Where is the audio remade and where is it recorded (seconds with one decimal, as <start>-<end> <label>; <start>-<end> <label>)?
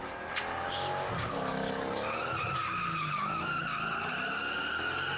0.0-5.2 recorded